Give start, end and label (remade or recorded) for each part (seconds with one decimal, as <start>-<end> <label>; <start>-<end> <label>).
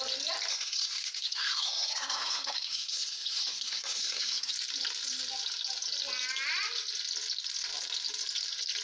0.0-0.5 recorded; 0.5-4.5 remade; 4.5-8.8 recorded